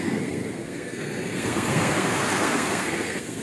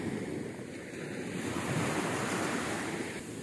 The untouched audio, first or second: second